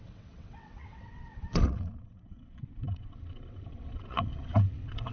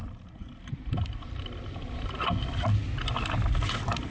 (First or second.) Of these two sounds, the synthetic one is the first